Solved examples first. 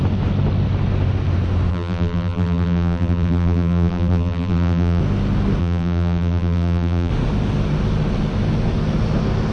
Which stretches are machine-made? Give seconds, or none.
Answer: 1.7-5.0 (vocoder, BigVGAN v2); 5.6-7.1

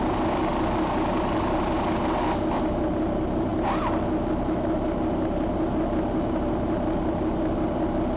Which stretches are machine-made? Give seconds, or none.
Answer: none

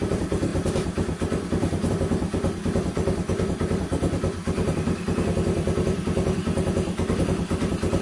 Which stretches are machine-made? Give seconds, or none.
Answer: 0.0-8.0 (vocoder, BigVGAN v2)

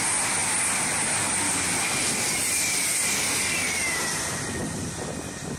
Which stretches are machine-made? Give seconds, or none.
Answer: 0.4-3.8 (vocoder, BigVGAN v2)